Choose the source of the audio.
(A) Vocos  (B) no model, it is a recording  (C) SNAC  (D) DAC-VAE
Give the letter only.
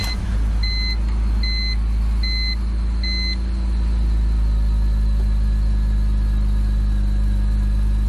B